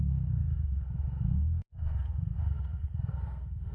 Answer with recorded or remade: remade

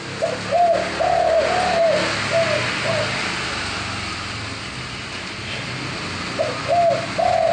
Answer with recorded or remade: recorded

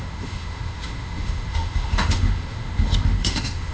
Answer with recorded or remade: remade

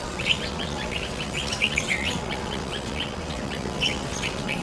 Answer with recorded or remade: remade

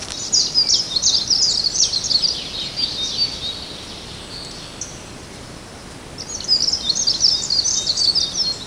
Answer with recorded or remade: recorded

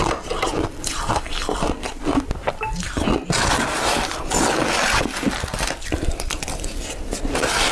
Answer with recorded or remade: recorded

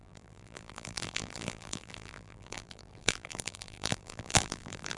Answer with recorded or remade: remade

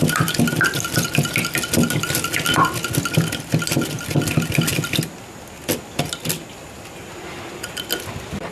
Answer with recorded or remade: recorded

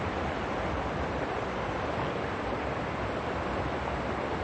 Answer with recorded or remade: recorded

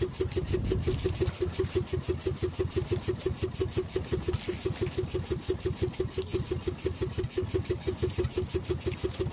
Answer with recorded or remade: recorded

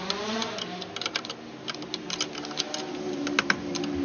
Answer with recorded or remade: recorded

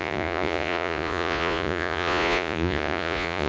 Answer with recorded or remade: remade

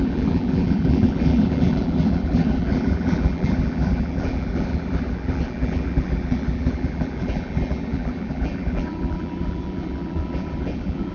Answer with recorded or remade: remade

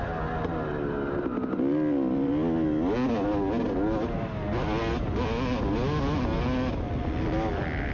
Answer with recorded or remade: recorded